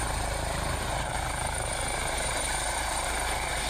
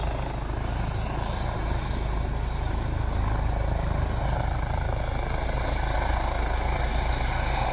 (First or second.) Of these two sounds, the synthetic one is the first